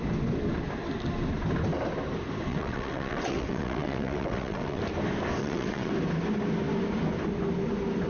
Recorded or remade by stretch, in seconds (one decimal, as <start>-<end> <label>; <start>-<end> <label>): 0.0-2.5 recorded; 2.5-4.8 remade; 4.8-5.4 recorded; 5.4-5.9 remade; 5.9-8.1 recorded